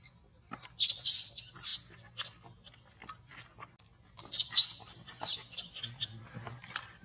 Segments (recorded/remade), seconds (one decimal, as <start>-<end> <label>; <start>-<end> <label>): 0.0-7.0 recorded

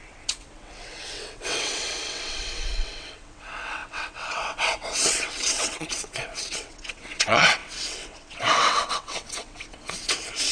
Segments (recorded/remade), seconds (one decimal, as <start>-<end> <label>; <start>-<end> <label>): 0.0-10.5 remade

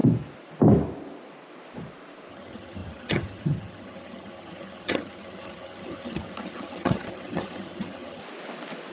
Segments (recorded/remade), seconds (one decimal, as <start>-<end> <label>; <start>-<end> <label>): 0.0-2.3 recorded; 2.3-8.2 remade; 8.2-8.9 recorded

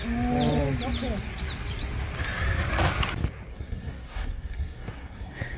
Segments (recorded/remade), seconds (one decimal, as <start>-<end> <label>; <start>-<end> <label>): 0.0-3.5 recorded; 3.5-5.6 remade

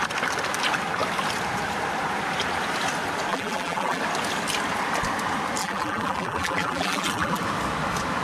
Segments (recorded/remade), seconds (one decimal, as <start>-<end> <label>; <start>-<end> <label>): 0.0-3.3 recorded; 3.3-4.0 remade; 4.0-5.6 recorded; 5.6-7.4 remade; 7.4-8.2 recorded